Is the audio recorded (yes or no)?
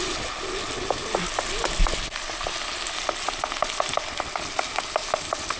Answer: yes